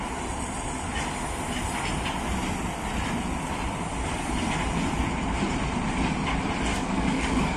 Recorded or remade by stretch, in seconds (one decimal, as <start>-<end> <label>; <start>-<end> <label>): 0.0-6.7 recorded; 6.7-7.6 remade